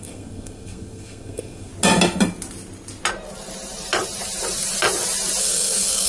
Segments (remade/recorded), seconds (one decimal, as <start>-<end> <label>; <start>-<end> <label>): 0.0-1.7 remade; 1.7-5.4 recorded; 5.4-6.1 remade